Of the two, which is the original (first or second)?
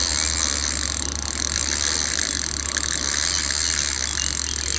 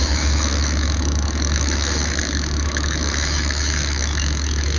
first